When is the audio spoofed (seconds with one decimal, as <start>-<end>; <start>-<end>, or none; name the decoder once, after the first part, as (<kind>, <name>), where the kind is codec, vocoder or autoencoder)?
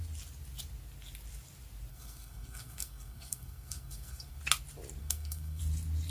1.9-4.4 (codec, SNAC); 5.0-5.6